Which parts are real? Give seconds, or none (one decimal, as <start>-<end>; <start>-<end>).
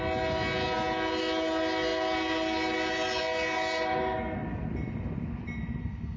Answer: 0.0-6.2